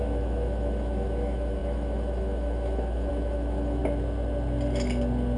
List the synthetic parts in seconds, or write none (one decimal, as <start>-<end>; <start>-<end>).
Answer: 0.0-3.8